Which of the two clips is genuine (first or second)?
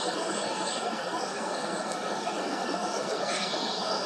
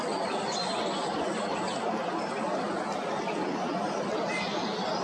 second